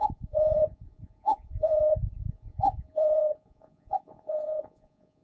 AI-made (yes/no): yes